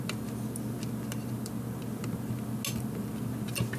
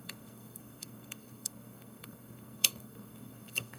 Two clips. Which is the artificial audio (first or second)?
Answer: second